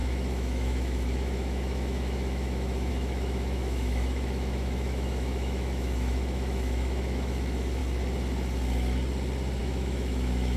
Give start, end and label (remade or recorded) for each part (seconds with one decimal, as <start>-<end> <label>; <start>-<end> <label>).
0.0-7.8 remade; 7.8-9.6 recorded; 9.6-10.6 remade